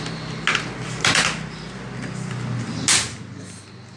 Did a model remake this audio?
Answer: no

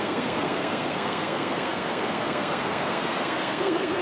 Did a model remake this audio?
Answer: yes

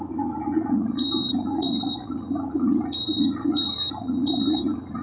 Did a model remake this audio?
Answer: yes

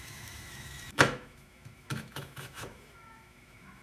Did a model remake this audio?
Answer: yes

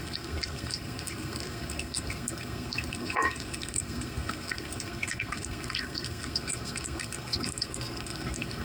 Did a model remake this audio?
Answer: yes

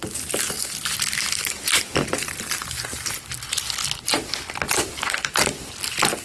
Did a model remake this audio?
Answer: no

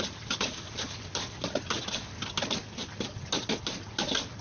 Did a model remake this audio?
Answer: no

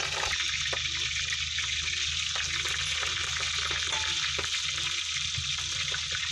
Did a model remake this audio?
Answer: no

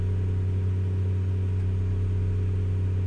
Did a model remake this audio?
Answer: no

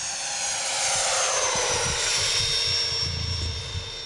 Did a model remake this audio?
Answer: no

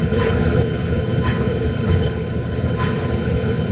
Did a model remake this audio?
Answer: yes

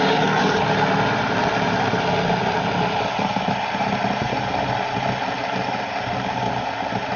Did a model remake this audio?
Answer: no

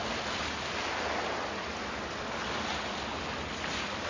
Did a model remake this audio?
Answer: no